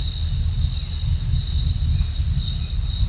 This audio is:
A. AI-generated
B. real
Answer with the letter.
B